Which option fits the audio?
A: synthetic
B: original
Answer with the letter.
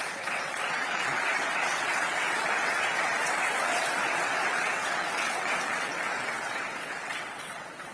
A